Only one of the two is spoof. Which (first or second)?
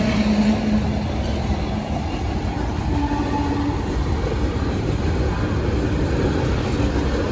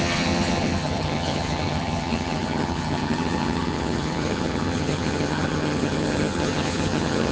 second